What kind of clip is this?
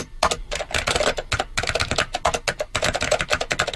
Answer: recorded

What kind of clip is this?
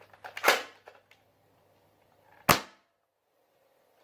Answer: recorded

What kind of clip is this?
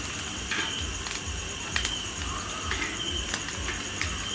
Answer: recorded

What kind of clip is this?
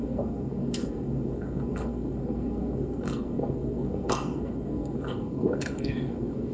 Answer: remade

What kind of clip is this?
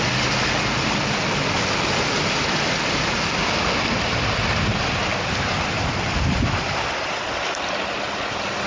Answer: recorded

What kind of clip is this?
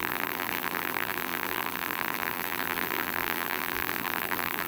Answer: remade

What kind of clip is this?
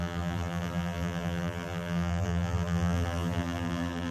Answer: remade